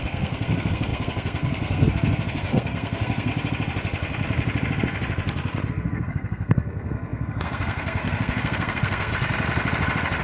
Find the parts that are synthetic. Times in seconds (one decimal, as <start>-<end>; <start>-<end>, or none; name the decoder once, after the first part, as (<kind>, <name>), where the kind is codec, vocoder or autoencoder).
0.0-3.3 (codec, SNAC); 5.7-9.1